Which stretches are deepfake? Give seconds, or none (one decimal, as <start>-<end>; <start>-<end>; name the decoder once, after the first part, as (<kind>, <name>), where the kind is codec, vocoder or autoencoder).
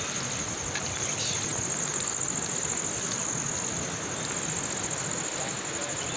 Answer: none